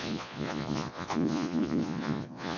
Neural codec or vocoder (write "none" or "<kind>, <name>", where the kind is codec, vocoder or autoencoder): vocoder, Vocos